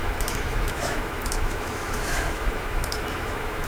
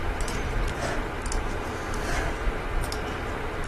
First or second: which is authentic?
second